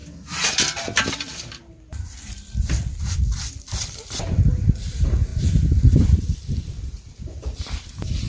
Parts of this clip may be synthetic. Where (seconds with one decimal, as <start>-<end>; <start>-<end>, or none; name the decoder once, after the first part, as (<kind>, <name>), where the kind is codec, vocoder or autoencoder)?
0.0-8.3 (vocoder, BigVGAN v2)